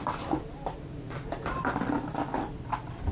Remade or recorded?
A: recorded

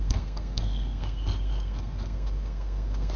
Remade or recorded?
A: remade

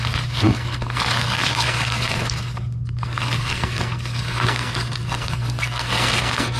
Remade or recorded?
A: remade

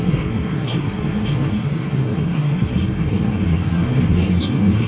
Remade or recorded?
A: remade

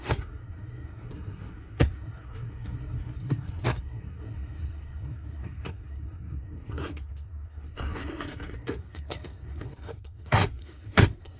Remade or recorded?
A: remade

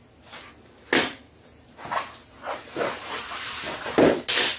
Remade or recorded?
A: recorded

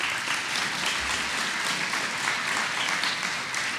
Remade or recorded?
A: recorded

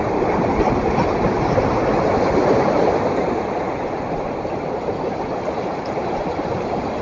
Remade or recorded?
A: recorded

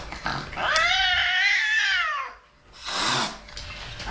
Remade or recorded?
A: recorded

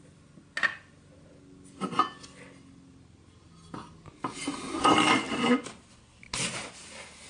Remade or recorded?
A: recorded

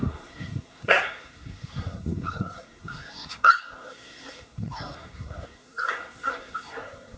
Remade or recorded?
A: remade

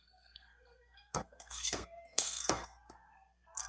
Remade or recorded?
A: remade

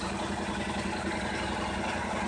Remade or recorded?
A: recorded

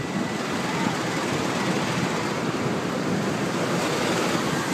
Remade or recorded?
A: recorded